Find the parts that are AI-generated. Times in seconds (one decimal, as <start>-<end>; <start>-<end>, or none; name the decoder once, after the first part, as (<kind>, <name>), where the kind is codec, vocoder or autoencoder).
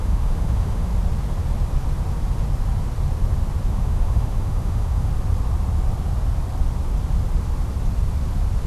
0.0-0.9 (autoencoder, DAC-VAE); 3.7-5.1